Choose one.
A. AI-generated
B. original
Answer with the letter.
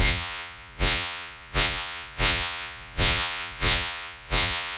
A